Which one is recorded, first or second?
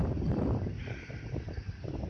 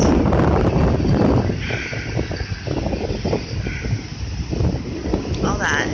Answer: second